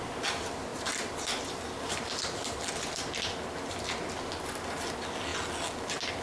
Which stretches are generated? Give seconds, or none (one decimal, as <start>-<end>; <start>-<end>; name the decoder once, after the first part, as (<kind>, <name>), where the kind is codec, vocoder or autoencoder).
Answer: none